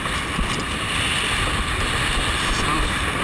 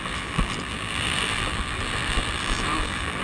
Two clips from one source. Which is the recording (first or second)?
first